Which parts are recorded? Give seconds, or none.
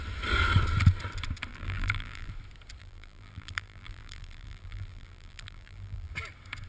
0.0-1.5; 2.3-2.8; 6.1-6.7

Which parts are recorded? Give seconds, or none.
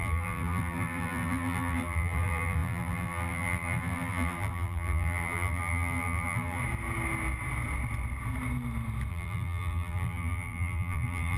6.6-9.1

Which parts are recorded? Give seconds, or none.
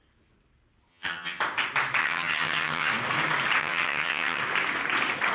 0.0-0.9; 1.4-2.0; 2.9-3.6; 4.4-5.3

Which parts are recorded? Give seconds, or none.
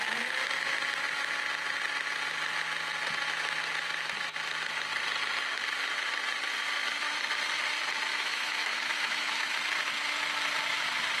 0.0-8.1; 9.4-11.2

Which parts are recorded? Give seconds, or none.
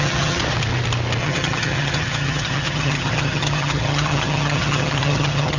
0.4-1.2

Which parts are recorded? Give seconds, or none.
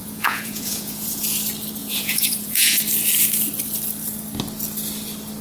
1.2-1.8; 2.8-5.4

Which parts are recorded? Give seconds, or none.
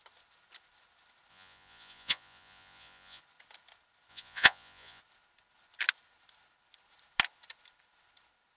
0.0-1.3; 3.2-4.1; 5.0-8.6